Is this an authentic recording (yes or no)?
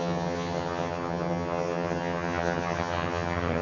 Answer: no